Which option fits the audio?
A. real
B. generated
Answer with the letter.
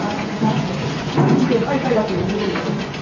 B